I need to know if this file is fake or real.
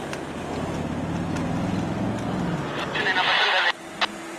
real